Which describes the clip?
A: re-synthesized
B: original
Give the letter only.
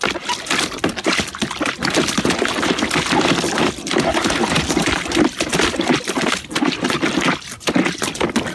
B